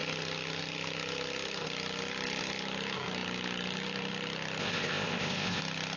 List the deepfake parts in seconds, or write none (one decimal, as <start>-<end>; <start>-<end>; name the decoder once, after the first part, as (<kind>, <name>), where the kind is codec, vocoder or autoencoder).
4.6-5.6 (codec, ZipCodec)